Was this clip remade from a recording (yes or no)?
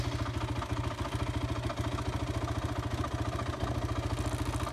no